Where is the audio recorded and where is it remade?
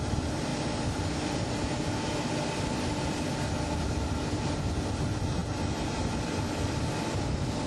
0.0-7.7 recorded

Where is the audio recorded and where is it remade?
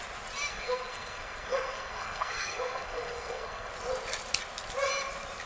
0.0-0.5 recorded; 0.5-3.7 remade; 3.7-5.5 recorded